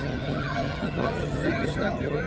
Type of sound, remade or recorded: remade